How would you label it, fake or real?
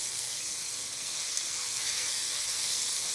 fake